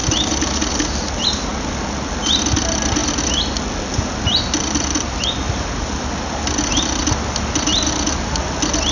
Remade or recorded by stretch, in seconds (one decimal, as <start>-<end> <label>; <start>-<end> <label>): 0.0-8.9 recorded